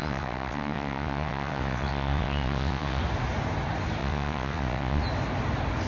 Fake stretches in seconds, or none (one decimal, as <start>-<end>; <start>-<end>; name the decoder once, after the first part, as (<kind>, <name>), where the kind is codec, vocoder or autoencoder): 0.0-3.0 (vocoder, WaveNeXt); 4.0-5.0